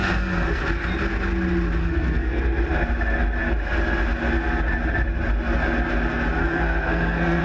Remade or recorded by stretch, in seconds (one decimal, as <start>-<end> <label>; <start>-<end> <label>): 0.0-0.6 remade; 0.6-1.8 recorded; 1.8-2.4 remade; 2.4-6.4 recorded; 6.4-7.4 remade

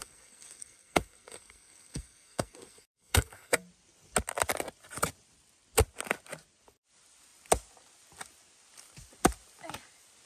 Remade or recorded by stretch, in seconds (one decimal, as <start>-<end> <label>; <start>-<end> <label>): 0.0-3.6 remade; 3.6-10.3 recorded

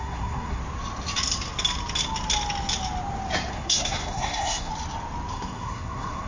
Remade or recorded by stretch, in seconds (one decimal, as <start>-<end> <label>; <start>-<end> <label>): 0.0-0.6 remade; 0.6-3.5 recorded; 3.5-4.7 remade; 4.7-5.3 recorded; 5.3-6.3 remade